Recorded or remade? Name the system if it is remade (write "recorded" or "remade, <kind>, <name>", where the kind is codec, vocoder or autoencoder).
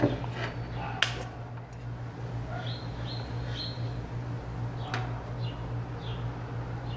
recorded